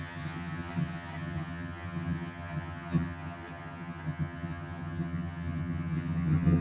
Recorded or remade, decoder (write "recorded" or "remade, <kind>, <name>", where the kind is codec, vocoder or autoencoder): remade, vocoder, HiFi-GAN